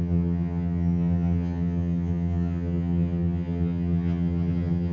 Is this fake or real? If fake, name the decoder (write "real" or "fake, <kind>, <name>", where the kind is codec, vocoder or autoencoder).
fake, vocoder, HiFi-GAN